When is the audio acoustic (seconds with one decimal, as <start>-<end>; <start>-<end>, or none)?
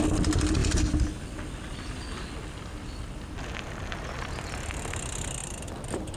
0.0-5.4